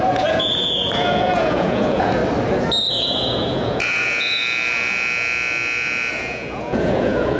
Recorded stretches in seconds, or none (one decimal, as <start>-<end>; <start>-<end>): 2.2-2.8; 4.4-6.1